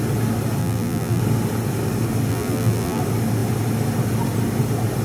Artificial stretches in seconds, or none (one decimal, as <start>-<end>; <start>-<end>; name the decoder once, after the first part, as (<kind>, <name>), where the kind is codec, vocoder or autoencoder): 0.6-1.2 (vocoder, BigVGAN v2); 2.3-3.0